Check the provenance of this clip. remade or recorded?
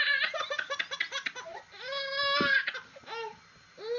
recorded